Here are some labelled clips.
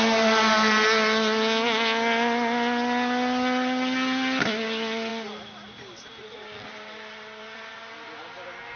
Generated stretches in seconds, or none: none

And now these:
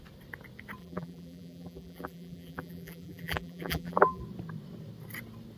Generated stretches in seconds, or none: 0.8-4.2 (vocoder, BigVGAN v2)

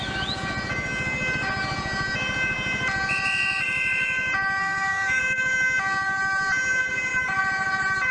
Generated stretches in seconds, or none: 4.6-5.2 (codec, SNAC)

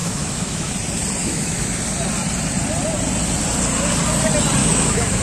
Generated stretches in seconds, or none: 0.0-0.7 (autoencoder, DAC-VAE); 1.2-1.8; 4.6-5.2

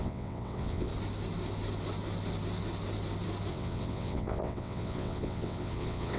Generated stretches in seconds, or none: 0.0-0.9 (vocoder, WaveNeXt); 3.5-6.2

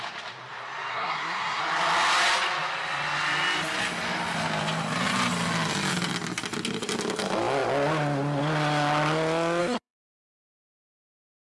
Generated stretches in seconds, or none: 0.9-1.6 (codec, SNAC); 9.6-10.4